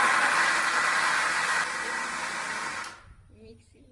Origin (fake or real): real